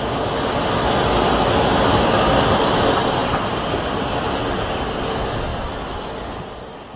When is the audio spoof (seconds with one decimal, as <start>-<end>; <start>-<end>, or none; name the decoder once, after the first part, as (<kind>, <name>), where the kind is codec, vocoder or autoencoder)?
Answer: 3.2-4.3 (vocoder, BigVGAN v2)